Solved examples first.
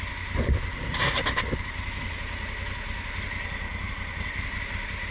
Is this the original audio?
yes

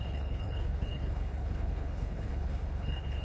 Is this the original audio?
no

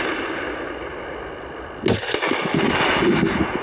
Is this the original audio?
yes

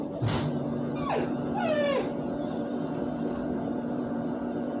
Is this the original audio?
no